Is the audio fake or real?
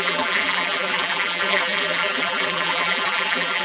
fake